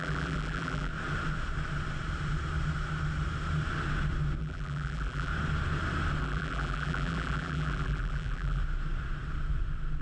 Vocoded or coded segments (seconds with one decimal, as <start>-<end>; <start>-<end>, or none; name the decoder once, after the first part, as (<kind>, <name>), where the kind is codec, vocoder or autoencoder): 0.0-0.9 (vocoder, BigVGAN v2); 4.4-5.3; 6.2-8.6